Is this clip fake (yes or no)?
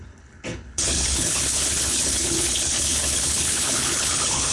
yes